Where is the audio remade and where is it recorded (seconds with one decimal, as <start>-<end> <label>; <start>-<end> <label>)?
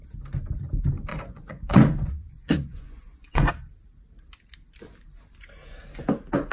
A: 0.0-1.1 recorded; 1.1-3.5 remade; 3.5-6.5 recorded